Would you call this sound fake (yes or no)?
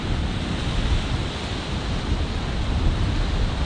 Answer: no